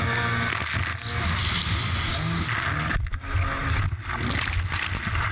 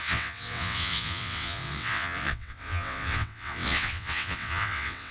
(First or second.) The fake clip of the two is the second